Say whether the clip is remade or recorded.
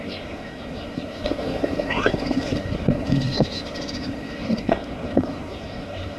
remade